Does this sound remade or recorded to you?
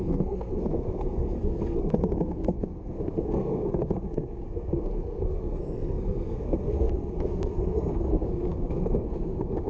remade